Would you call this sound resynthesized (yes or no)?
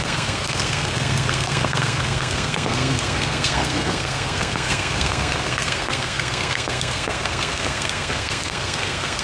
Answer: yes